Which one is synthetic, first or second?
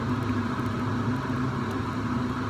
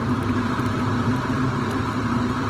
second